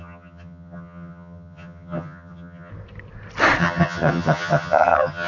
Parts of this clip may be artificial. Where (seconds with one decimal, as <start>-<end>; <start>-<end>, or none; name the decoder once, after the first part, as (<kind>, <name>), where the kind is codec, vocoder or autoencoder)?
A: 0.0-2.7 (vocoder, HiFi-GAN); 3.6-5.3